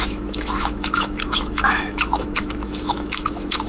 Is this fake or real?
fake